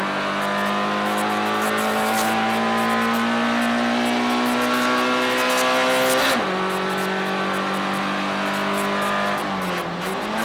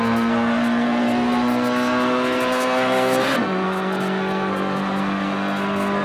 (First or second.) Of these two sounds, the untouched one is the first